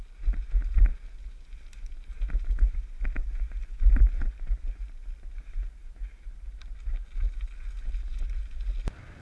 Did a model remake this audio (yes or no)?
no